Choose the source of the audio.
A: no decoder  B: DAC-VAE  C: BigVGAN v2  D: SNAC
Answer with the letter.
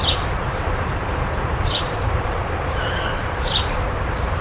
C